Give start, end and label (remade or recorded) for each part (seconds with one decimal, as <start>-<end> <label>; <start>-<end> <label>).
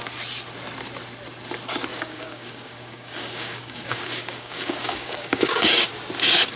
0.0-1.9 recorded; 1.9-5.9 remade; 5.9-6.6 recorded